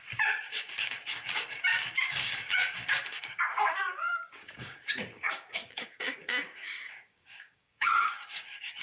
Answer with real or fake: fake